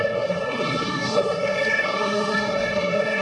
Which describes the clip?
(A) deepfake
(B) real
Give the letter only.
A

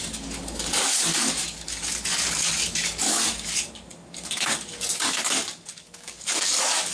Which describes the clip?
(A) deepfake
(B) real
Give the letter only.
A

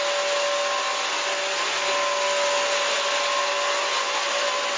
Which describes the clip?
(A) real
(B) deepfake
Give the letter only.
A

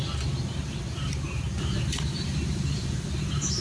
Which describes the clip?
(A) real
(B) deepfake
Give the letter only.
A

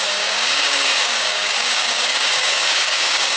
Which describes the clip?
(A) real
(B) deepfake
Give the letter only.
B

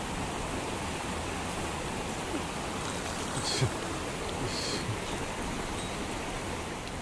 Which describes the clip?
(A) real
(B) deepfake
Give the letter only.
A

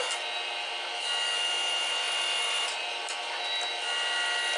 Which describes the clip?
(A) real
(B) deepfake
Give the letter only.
A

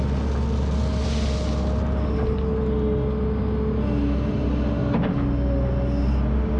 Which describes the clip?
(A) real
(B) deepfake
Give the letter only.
A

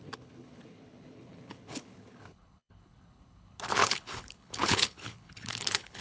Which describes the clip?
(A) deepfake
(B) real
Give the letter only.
A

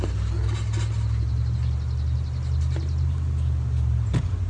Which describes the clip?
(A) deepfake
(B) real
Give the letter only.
B